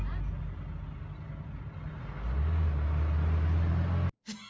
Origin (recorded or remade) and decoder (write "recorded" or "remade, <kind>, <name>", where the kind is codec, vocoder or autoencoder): recorded